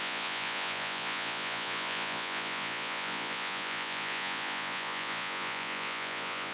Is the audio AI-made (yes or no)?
yes